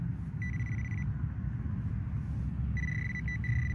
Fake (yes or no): no